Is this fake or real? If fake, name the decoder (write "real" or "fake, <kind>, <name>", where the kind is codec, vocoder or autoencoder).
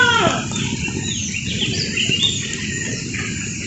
real